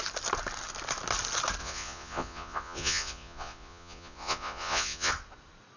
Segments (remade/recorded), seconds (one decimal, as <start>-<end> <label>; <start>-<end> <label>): 0.0-1.6 recorded; 1.6-5.1 remade; 5.1-5.8 recorded